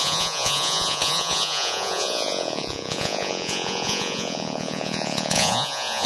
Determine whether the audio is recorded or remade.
remade